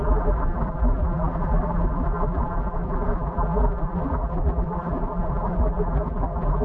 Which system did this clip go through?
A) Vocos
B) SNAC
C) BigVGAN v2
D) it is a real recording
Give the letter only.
C